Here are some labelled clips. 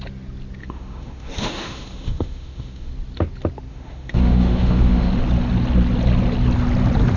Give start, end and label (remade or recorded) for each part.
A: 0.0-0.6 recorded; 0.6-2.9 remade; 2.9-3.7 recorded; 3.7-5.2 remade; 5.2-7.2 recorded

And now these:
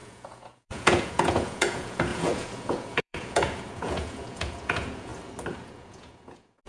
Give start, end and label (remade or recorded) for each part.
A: 0.0-5.1 remade; 5.1-5.6 recorded; 5.6-6.7 remade

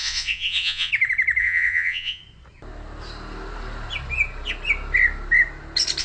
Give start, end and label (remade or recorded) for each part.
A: 0.0-0.9 remade; 0.9-1.4 recorded; 1.4-2.2 remade; 2.2-6.0 recorded